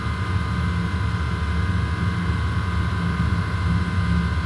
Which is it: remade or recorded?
recorded